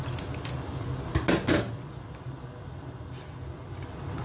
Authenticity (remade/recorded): recorded